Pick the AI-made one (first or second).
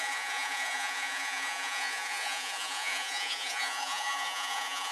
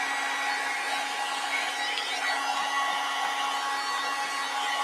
first